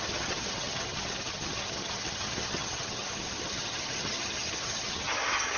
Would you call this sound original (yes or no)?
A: no